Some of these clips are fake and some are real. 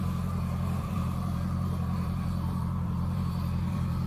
fake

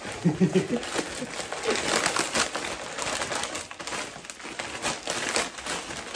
real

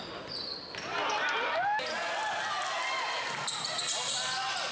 real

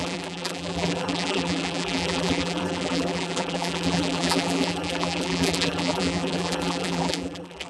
fake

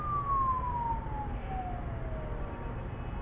real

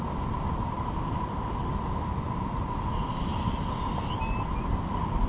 real